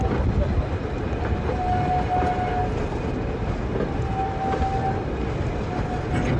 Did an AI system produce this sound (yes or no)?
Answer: no